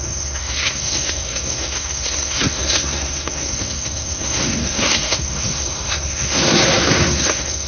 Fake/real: fake